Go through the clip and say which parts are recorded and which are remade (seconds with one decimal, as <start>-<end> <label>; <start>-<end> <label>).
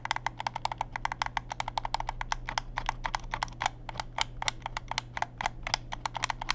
0.0-6.5 recorded